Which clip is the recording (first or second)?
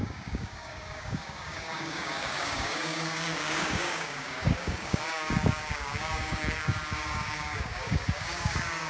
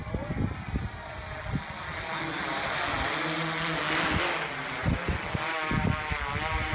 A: second